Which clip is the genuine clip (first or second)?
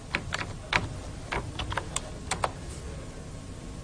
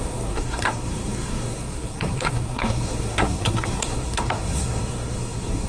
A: first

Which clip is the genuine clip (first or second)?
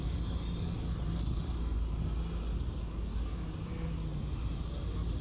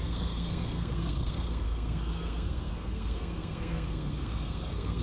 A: first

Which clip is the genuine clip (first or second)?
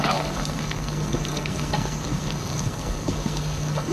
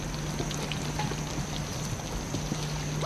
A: second